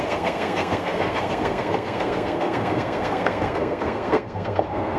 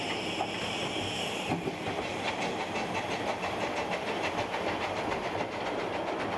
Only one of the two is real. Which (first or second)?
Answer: second